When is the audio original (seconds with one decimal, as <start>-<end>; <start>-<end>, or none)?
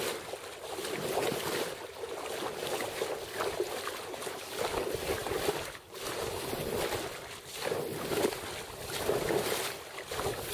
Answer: 0.0-10.5